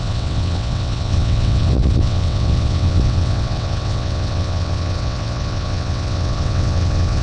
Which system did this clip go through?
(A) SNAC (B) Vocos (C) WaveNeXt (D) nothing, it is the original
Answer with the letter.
C